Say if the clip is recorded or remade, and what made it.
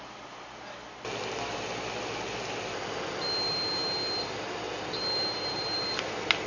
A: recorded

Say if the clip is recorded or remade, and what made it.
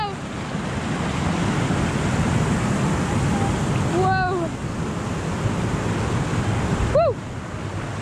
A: recorded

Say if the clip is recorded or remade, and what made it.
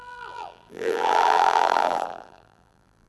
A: remade, vocoder, BigVGAN v2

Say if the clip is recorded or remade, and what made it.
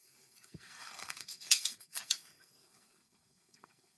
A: remade, codec, SNAC